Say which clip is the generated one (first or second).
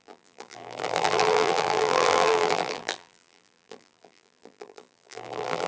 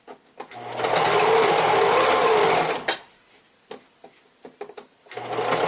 first